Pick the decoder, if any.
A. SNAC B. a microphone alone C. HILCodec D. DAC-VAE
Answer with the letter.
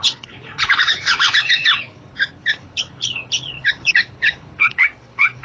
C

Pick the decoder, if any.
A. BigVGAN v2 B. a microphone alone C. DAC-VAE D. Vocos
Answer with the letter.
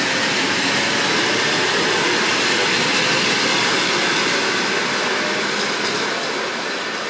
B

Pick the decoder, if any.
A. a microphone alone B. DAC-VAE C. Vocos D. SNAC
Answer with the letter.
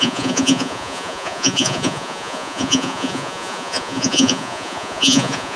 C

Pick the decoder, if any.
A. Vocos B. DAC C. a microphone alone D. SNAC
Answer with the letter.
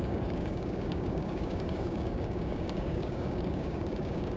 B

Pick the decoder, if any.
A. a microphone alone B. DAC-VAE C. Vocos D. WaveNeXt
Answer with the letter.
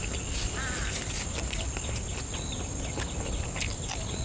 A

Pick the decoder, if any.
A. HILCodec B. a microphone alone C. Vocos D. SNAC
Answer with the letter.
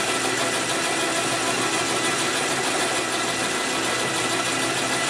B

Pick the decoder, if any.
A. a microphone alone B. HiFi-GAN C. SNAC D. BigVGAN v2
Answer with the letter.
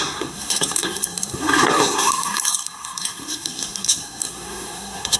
C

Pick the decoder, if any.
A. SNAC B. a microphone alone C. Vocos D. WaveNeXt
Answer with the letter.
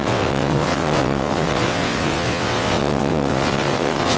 D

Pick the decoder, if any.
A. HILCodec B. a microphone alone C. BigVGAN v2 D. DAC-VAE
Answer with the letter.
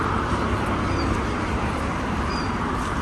C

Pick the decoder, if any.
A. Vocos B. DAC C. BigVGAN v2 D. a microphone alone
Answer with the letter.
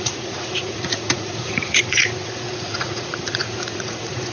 A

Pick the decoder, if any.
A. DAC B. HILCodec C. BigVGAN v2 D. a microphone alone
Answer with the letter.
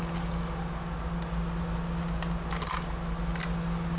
D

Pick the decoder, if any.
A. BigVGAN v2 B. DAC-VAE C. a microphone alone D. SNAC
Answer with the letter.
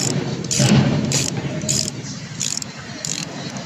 A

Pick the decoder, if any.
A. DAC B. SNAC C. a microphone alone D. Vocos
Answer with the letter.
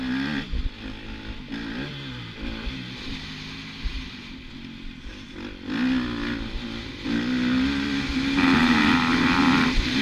C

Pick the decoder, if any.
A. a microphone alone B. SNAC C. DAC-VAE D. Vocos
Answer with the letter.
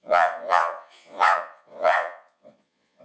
D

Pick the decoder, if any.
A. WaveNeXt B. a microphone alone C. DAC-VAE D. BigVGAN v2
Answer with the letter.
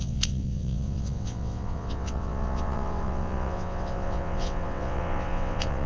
A